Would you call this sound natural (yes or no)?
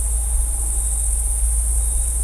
yes